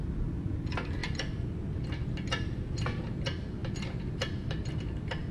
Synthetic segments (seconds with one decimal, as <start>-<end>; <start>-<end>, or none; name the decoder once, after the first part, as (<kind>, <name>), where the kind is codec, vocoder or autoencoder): none